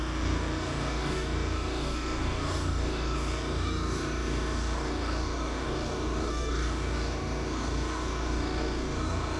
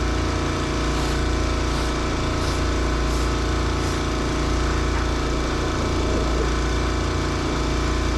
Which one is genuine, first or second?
second